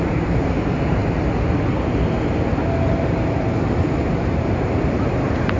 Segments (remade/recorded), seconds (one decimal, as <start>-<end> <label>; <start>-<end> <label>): 0.0-1.0 remade; 1.0-4.4 recorded; 4.4-5.6 remade